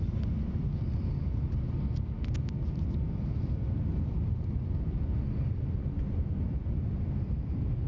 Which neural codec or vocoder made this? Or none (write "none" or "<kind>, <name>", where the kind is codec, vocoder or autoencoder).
none